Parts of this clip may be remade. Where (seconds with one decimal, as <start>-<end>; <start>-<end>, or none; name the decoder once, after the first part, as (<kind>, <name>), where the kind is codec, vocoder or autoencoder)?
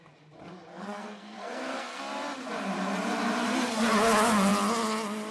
0.7-2.0 (codec, SNAC)